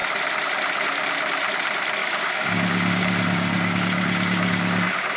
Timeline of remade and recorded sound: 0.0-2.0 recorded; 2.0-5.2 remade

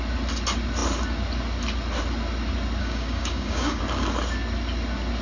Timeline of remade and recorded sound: 0.0-2.8 recorded; 2.8-3.8 remade; 3.8-5.2 recorded

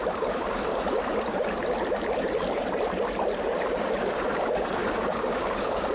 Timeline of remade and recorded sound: 0.0-0.7 remade; 0.7-4.0 recorded; 4.0-5.9 remade

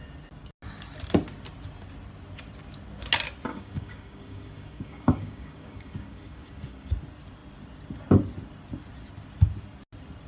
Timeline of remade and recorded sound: 0.0-3.5 recorded; 3.5-6.9 remade; 6.9-10.3 recorded

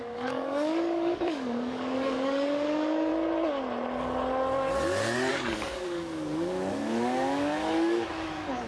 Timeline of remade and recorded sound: 0.0-3.1 remade; 3.1-5.3 recorded; 5.3-8.7 remade

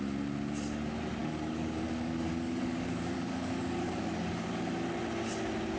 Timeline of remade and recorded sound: 0.0-1.2 recorded; 1.2-4.7 remade; 4.7-5.8 recorded